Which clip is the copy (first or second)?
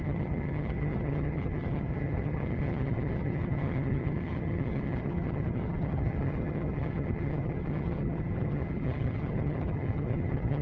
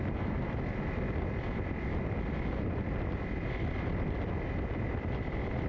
first